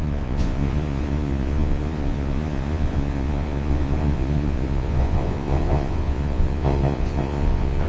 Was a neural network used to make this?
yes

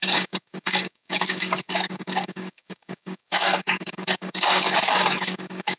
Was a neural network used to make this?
yes